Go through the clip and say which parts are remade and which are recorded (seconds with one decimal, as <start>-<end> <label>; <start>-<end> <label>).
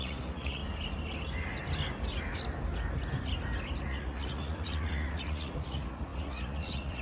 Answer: 0.0-0.6 remade; 0.6-3.8 recorded; 3.8-7.0 remade